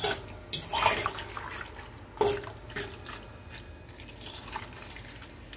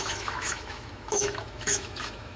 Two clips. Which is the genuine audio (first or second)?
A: first